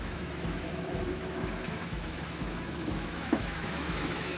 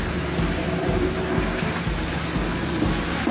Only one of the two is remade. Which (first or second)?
first